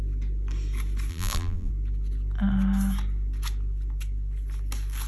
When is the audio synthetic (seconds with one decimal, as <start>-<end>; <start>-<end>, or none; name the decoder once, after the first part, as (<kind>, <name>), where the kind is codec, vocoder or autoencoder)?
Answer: 1.1-1.7 (vocoder, BigVGAN v2)